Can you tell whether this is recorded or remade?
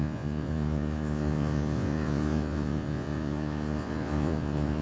remade